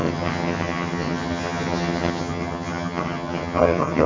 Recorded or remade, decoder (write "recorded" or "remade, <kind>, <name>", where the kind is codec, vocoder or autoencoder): remade, vocoder, HiFi-GAN